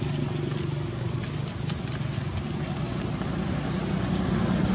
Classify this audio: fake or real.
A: real